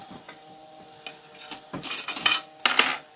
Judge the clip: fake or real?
real